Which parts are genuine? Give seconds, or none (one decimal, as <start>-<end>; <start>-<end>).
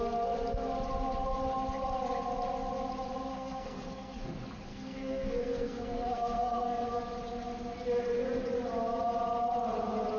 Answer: 0.0-3.3; 4.2-4.7; 7.0-10.2